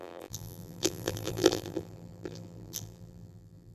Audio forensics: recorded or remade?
remade